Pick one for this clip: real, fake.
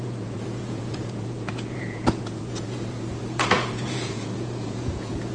fake